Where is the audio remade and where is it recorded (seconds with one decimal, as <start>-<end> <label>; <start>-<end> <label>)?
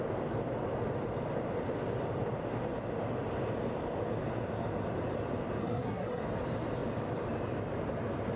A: 0.0-5.6 recorded; 5.6-6.2 remade; 6.2-8.4 recorded